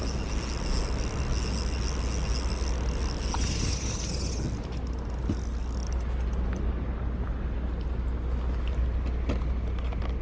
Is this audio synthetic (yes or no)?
no